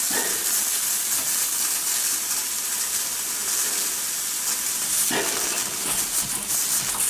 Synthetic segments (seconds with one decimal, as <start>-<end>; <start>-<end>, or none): none